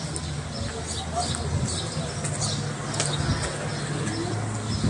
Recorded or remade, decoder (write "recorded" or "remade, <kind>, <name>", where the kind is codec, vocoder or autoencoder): recorded